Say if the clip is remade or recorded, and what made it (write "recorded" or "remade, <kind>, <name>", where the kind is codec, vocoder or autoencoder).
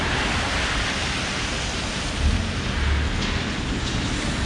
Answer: recorded